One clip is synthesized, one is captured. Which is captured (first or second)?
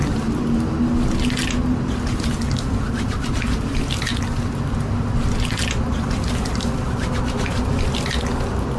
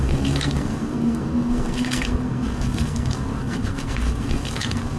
first